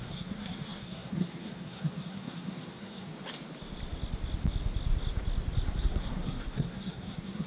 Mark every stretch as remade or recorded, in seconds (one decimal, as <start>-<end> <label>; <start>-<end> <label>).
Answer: 0.0-3.1 remade; 3.1-5.8 recorded; 5.8-7.5 remade